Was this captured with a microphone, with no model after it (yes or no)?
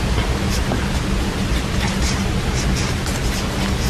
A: yes